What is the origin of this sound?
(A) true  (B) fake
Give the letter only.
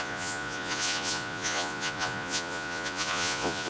B